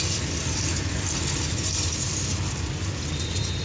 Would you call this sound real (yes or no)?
yes